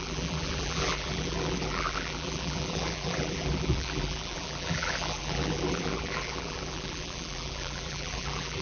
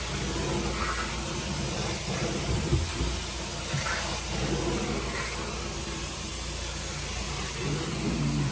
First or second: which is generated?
first